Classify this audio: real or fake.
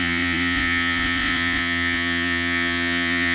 fake